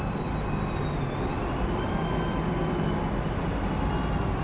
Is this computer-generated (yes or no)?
no